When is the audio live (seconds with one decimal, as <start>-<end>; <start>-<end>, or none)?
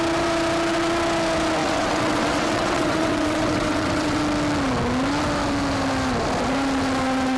0.0-1.6; 4.2-7.4